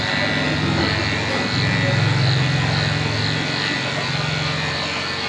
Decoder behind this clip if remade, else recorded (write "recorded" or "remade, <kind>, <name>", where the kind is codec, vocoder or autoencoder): recorded